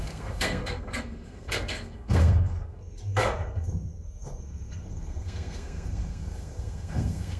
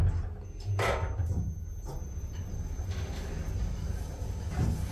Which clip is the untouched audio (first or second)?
second